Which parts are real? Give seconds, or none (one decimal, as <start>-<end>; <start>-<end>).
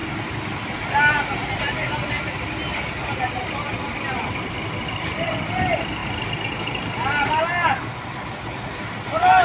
0.0-9.4